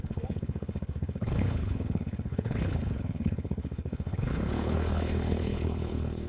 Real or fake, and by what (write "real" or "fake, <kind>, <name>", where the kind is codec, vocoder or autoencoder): fake, codec, HILCodec